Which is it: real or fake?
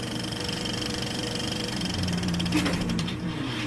fake